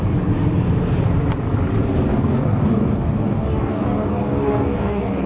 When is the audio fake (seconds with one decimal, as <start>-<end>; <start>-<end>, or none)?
2.1-5.3